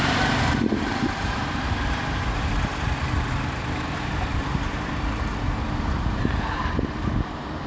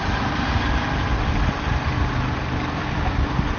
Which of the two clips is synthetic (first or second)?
first